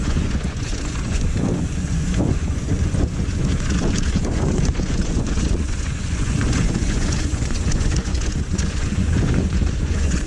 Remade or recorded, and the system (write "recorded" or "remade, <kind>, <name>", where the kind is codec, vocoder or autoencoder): remade, vocoder, Vocos